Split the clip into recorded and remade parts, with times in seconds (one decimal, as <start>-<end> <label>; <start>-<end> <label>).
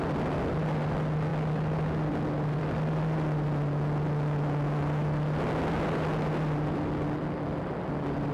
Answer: 0.0-8.3 recorded